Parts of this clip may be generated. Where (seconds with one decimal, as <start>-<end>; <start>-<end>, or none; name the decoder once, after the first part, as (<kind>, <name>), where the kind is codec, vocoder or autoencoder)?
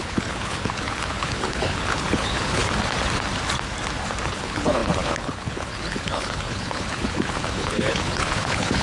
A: 0.0-2.6 (codec, HILCodec); 4.3-8.8